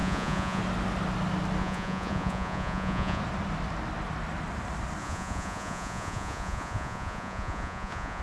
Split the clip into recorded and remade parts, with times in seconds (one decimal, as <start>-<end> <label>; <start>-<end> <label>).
0.0-0.6 remade; 0.6-1.6 recorded; 1.6-3.2 remade; 3.2-5.0 recorded; 5.0-8.2 remade